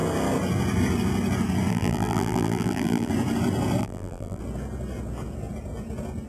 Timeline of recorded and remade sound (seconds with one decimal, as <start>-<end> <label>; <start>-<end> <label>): 0.0-1.7 recorded; 1.7-3.1 remade; 3.1-3.8 recorded; 3.8-4.4 remade; 4.4-6.3 recorded